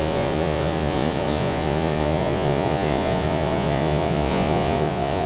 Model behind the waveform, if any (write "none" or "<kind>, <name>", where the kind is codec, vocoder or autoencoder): vocoder, Vocos